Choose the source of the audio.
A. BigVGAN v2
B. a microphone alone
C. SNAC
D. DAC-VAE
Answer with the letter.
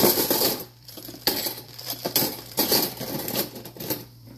A